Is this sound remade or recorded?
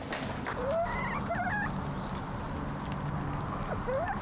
recorded